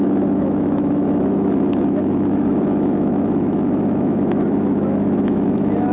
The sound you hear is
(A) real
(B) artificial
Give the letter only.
B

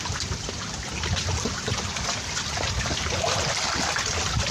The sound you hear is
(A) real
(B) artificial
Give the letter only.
A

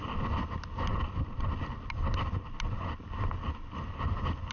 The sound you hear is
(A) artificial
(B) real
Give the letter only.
B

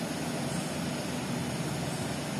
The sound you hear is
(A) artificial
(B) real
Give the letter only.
B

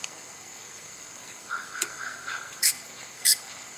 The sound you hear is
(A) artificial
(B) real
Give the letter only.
A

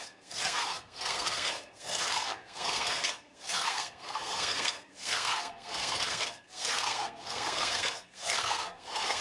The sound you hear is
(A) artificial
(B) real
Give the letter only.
A